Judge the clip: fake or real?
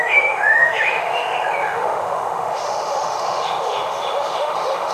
fake